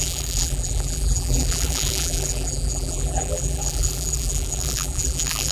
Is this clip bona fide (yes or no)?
no